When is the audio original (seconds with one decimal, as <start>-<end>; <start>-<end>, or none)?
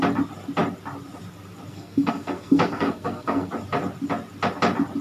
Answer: 0.0-1.7; 3.5-5.0